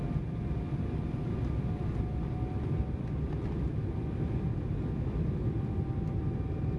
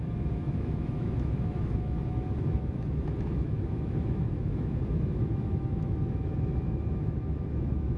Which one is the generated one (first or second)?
second